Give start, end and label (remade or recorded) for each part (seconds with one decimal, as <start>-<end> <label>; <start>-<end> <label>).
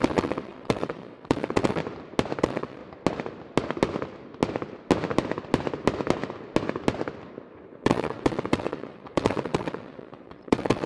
0.0-1.8 remade; 1.8-2.4 recorded; 2.4-2.8 remade; 2.8-7.8 recorded; 7.8-10.9 remade